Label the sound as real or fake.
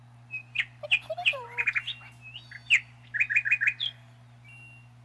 real